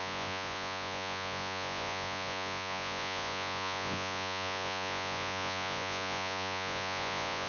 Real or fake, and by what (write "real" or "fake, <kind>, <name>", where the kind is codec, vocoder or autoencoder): fake, vocoder, Vocos